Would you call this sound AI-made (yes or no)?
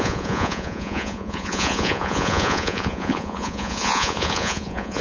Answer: yes